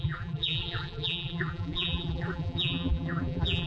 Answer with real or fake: fake